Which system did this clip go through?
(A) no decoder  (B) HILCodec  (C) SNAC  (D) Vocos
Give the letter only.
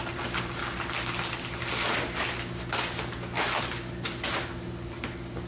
A